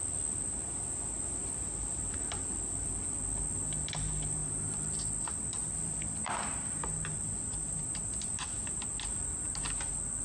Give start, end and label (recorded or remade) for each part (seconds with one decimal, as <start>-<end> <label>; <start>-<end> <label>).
0.0-5.6 recorded; 5.6-8.7 remade; 8.7-10.2 recorded